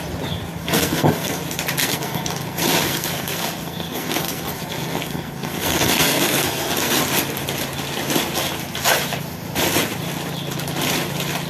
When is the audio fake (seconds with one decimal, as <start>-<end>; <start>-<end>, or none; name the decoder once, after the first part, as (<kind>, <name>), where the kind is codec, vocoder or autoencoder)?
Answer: 0.6-1.4 (codec, SNAC); 1.8-7.0